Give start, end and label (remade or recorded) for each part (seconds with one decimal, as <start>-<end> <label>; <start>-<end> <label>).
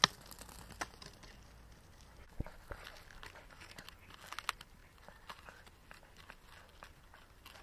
0.0-7.6 recorded